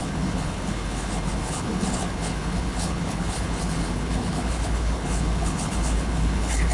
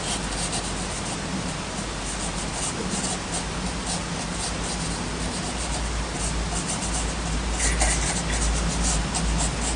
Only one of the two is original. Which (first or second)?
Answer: second